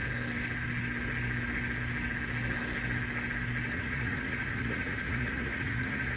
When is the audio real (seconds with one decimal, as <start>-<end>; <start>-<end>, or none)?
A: 0.0-3.7